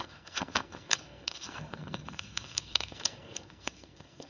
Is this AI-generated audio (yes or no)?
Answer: yes